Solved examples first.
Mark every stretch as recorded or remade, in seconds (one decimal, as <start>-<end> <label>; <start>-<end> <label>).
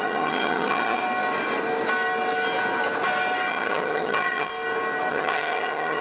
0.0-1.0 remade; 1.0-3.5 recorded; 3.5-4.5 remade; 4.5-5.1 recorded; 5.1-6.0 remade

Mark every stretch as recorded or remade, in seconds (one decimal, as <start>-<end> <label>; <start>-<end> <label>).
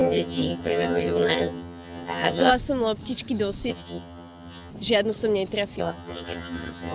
0.0-2.5 remade; 2.5-3.7 recorded; 3.7-4.7 remade; 4.7-5.8 recorded; 5.8-6.9 remade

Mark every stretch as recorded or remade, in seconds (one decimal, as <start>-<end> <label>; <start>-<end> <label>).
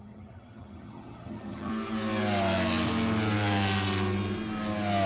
0.0-1.7 remade; 1.7-5.1 recorded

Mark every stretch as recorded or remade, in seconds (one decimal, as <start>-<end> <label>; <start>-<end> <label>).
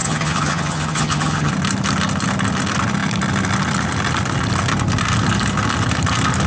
0.0-1.5 remade; 1.5-6.5 recorded